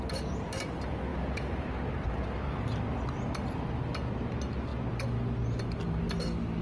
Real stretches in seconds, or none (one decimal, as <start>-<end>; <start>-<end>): 0.0-1.1; 2.4-6.6